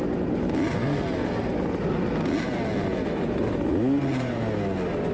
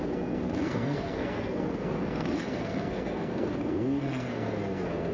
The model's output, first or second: second